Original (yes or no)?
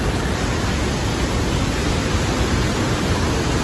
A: yes